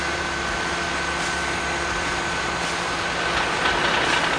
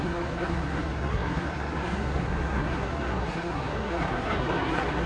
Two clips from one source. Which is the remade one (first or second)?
second